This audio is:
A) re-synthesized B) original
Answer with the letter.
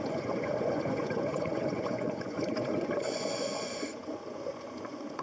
A